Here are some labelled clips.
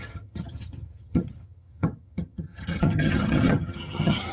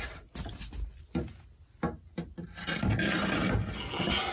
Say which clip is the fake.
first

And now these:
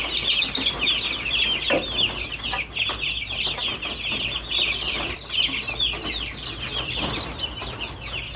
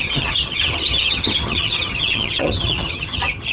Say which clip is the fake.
second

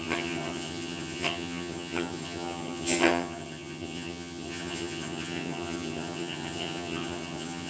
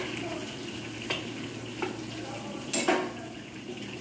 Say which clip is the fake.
first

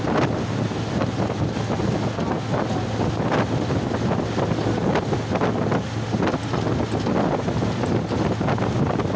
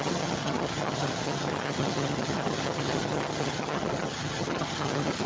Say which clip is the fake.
second